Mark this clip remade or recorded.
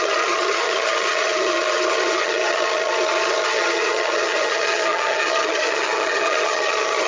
remade